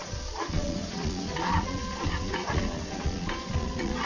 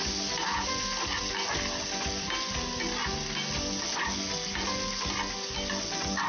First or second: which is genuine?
second